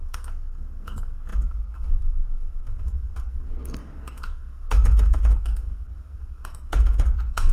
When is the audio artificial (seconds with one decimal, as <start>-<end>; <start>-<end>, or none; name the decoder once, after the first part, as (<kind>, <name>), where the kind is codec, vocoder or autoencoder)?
0.0-7.5 (codec, SNAC)

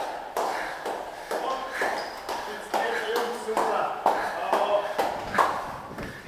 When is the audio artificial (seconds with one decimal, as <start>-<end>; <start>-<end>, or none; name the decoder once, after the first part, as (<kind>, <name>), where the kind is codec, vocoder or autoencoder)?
none

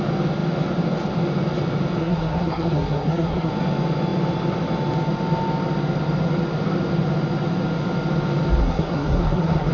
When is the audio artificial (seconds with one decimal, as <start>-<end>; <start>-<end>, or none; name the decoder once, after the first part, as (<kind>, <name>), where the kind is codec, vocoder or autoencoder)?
2.0-3.5 (codec, SNAC); 8.6-9.7

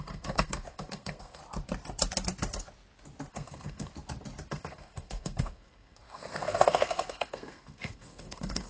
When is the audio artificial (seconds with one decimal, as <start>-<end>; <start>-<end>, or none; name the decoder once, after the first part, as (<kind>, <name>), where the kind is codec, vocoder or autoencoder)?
0.0-1.4 (codec, SNAC); 3.3-3.9; 4.5-8.7

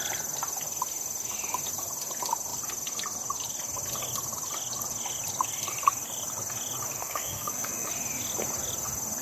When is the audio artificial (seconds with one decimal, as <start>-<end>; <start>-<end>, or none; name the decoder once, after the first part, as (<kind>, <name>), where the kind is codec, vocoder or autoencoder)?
7.0-7.9 (codec, SNAC)

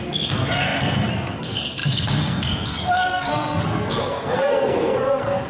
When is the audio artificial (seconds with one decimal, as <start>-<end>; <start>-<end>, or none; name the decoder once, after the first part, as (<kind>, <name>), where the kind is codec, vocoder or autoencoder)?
0.0-5.5 (codec, SNAC)

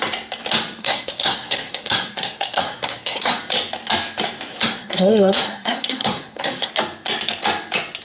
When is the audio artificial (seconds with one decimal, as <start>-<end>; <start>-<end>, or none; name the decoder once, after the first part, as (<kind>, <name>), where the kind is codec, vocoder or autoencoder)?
0.8-3.4 (codec, SNAC); 4.5-6.7

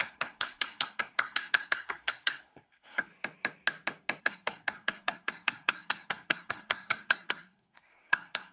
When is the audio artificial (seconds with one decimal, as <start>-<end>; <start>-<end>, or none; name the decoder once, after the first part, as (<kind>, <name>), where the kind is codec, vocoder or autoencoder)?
0.0-3.1 (codec, SNAC); 4.2-8.5